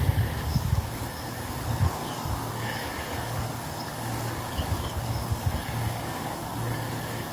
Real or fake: fake